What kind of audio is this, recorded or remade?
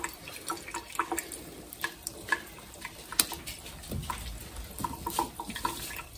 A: recorded